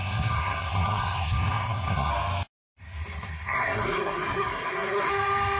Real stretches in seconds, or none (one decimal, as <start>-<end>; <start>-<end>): 2.1-2.8; 5.1-5.6